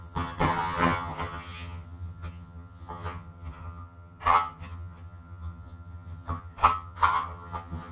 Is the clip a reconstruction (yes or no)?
yes